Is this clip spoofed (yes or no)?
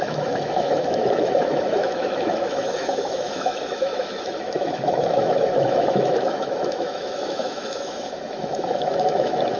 yes